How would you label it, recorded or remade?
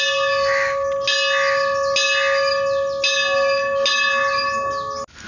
recorded